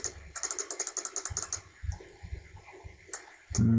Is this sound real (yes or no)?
yes